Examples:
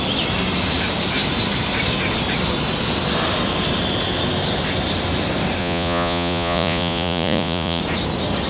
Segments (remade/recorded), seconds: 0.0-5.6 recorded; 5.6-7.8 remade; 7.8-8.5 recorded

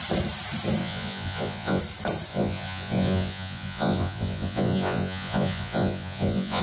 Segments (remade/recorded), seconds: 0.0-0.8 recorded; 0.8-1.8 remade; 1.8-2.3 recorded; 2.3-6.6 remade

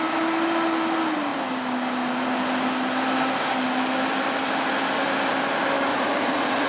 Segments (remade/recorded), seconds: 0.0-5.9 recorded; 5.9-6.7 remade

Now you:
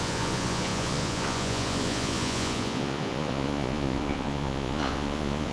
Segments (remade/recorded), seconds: 0.0-5.5 remade